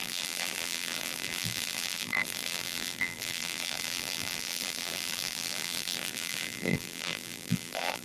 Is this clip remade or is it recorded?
remade